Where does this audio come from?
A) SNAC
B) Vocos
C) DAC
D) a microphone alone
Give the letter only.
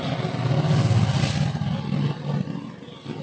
D